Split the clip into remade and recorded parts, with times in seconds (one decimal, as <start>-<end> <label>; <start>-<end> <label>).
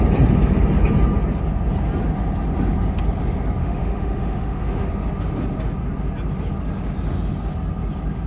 0.0-3.6 recorded; 3.6-4.9 remade; 4.9-8.3 recorded